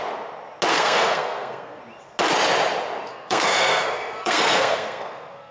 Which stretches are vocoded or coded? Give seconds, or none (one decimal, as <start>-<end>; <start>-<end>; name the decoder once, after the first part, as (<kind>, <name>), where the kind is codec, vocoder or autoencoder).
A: 0.7-1.8 (codec, SNAC); 3.1-5.5